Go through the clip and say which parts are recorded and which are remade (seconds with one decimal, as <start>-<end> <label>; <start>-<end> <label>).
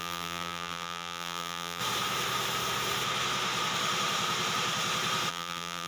0.0-1.8 remade; 1.8-5.3 recorded; 5.3-5.9 remade